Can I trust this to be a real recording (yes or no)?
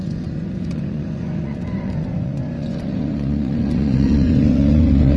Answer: no